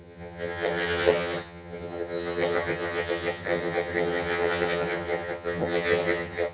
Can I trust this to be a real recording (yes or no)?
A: no